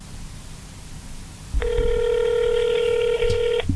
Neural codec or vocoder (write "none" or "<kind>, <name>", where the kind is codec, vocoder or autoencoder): none